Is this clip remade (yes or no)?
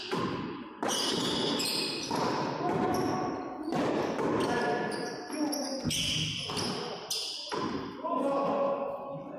no